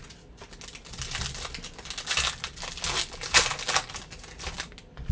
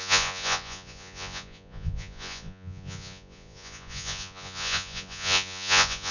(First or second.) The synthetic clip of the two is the second